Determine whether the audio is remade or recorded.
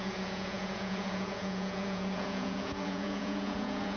remade